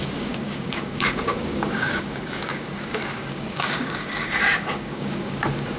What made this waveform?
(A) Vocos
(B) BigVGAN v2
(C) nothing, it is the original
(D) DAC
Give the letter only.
D